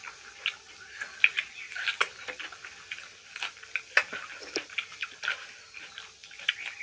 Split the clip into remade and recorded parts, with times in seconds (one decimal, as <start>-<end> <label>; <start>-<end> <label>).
0.0-1.3 recorded; 1.3-5.3 remade; 5.3-6.8 recorded

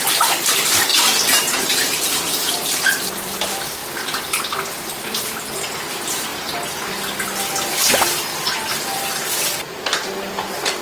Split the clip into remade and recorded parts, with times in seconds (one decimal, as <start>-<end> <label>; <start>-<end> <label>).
0.0-0.9 remade; 0.9-2.5 recorded; 2.5-6.3 remade; 6.3-7.5 recorded; 7.5-10.8 remade

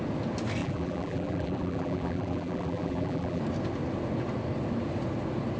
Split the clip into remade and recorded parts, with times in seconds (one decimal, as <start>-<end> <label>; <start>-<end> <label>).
0.0-0.6 recorded; 0.6-3.4 remade; 3.4-5.6 recorded